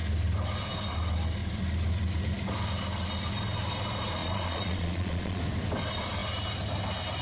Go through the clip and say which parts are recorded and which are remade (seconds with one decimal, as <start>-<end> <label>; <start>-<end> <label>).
0.0-4.2 recorded; 4.2-5.4 remade; 5.4-7.2 recorded